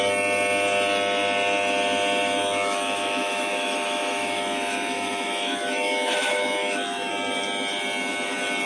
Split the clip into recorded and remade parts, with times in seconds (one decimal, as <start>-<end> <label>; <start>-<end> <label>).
0.0-2.4 recorded; 2.4-7.1 remade; 7.1-8.7 recorded